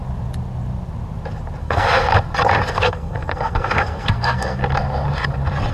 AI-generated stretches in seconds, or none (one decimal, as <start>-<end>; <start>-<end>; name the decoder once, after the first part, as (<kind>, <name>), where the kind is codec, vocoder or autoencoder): 1.6-2.1 (codec, SNAC); 2.7-4.6